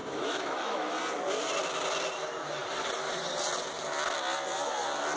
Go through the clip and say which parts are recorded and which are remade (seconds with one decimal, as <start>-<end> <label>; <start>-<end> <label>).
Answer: 0.0-0.9 remade; 0.9-5.2 recorded